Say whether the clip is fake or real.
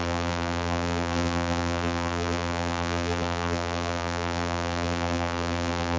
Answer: fake